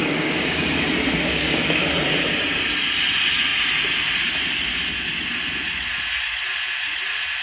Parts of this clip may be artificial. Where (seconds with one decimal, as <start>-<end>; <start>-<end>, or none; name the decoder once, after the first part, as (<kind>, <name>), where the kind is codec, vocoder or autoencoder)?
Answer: 0.0-0.8 (codec, DAC); 1.3-1.9